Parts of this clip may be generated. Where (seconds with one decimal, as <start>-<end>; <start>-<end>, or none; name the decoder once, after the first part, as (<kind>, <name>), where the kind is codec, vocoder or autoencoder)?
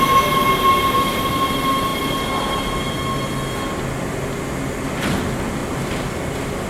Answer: none